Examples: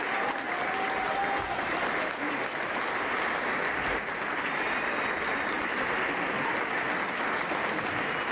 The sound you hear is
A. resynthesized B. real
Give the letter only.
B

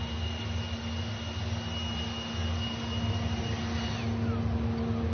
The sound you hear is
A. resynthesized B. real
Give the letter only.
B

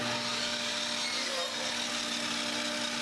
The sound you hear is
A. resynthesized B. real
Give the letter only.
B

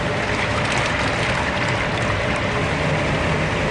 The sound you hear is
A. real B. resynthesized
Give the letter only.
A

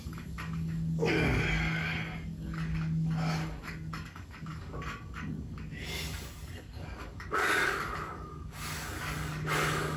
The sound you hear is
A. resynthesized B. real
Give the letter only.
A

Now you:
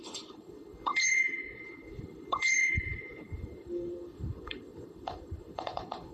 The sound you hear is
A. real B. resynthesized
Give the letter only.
B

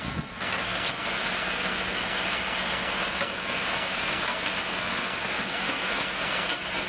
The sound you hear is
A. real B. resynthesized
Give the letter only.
B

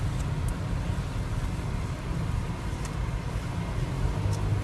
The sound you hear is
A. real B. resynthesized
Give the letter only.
A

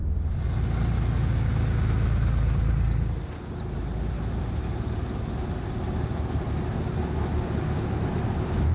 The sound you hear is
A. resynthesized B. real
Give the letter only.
B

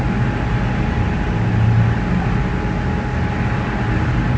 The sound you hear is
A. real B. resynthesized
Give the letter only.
A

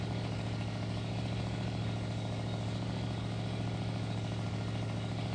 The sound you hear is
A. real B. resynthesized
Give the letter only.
B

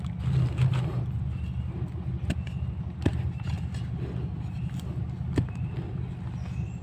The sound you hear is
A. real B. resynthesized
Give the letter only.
A